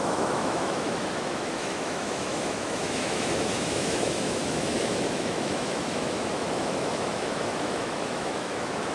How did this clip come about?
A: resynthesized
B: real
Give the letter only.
A